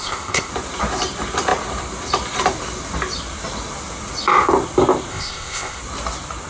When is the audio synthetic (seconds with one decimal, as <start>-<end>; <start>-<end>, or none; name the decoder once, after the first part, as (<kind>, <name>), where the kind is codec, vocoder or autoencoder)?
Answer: 0.0-0.5 (codec, ZipCodec); 5.1-5.8